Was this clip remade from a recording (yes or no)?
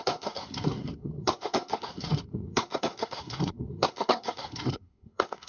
yes